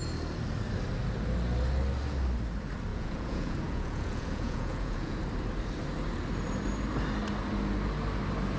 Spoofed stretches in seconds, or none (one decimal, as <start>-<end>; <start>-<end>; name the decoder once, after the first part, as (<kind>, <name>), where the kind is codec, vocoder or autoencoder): 2.9-5.2 (vocoder, Vocos)